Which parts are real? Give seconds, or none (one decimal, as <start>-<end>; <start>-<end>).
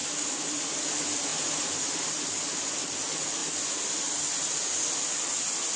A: 0.0-5.8